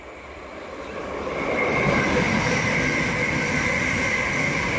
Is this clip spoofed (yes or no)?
yes